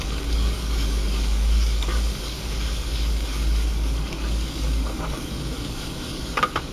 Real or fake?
fake